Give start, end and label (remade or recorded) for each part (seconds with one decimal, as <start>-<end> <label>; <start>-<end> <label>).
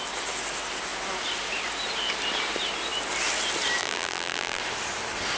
0.0-3.8 recorded; 3.8-4.6 remade; 4.6-5.4 recorded